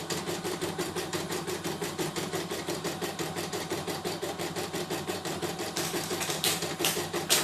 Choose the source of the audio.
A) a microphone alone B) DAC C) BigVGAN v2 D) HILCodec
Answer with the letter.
C